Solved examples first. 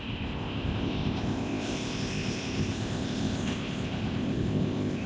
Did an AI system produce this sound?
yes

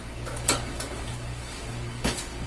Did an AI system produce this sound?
yes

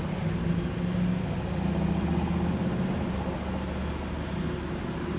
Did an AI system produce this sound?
no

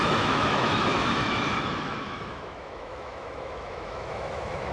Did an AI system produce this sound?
yes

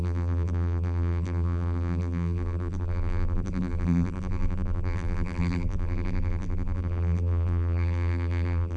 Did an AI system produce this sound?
yes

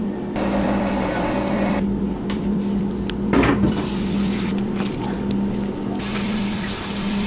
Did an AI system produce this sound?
yes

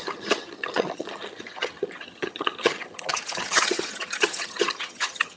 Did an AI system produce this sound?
yes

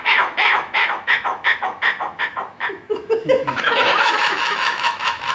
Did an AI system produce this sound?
yes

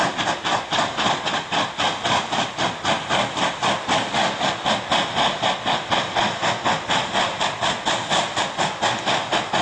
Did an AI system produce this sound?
no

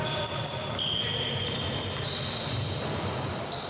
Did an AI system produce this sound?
no